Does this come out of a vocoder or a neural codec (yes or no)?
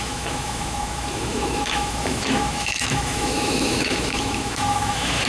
yes